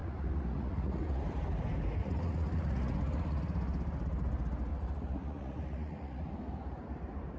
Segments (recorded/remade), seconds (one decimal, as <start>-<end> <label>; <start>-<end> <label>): 0.0-1.2 remade; 1.2-2.0 recorded; 2.0-3.4 remade; 3.4-4.7 recorded; 4.7-6.3 remade; 6.3-7.4 recorded